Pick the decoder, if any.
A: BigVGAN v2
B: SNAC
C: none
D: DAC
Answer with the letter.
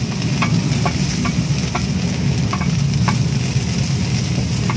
C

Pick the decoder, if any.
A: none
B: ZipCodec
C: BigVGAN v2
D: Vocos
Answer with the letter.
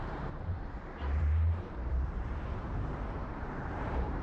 C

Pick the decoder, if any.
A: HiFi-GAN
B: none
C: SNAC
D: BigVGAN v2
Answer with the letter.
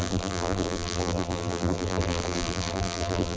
D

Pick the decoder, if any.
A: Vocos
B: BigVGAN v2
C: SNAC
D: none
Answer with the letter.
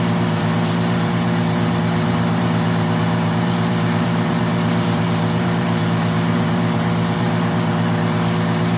B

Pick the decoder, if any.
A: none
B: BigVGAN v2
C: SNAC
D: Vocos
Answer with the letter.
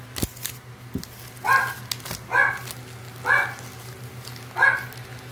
A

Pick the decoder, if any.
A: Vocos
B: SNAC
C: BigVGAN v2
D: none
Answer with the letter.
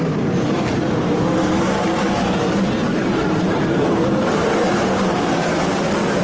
C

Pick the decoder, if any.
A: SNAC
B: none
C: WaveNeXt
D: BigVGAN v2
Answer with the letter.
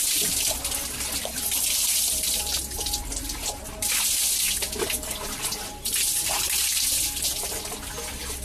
B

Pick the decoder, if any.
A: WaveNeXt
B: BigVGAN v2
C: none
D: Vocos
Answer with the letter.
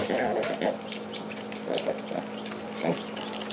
C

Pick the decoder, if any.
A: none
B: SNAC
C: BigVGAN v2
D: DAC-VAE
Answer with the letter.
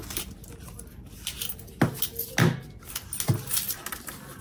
A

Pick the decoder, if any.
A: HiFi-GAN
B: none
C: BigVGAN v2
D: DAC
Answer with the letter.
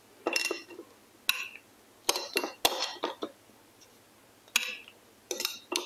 B